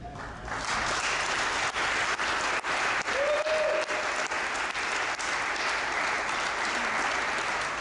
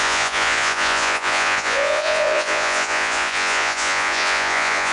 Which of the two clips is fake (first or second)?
second